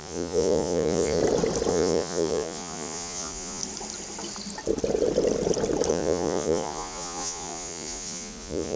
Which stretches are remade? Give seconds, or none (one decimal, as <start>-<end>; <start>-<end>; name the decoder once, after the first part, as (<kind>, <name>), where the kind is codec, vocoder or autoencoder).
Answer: 0.0-1.2 (vocoder, Vocos); 1.7-3.6; 5.9-8.8